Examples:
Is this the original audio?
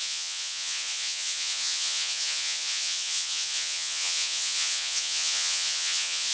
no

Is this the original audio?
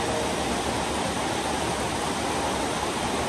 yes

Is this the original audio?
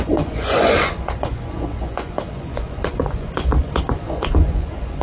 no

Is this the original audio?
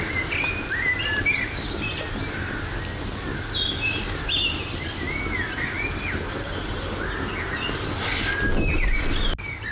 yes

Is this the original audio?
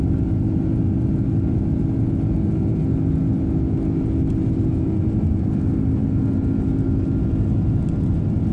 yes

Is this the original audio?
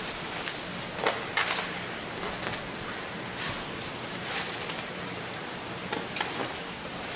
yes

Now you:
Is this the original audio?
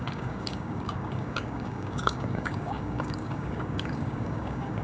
no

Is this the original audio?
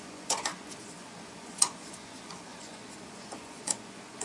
no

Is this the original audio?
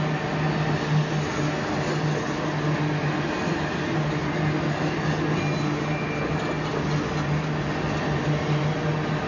yes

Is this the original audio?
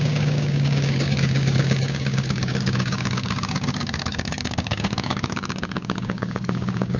no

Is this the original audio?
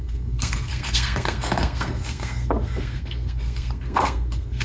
no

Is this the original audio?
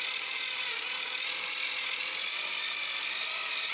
yes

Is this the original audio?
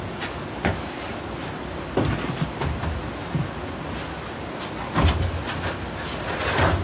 yes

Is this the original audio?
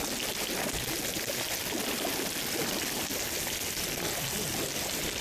yes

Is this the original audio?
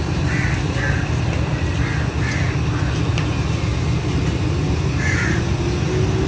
yes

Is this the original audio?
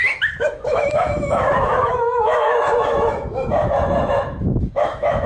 no